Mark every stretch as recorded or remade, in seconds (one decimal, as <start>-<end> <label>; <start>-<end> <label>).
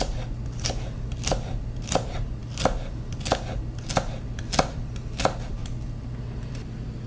0.0-7.1 recorded